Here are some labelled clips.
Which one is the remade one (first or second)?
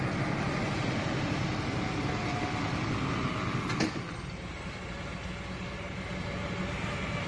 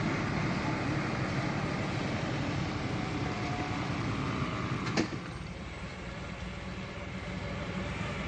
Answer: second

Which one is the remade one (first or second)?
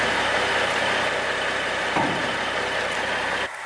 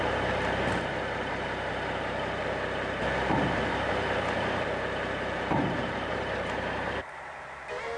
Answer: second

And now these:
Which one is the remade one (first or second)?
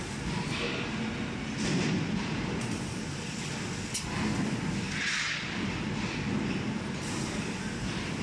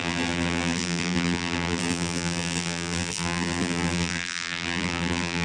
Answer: second